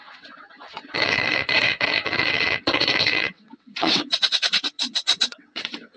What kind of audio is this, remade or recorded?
remade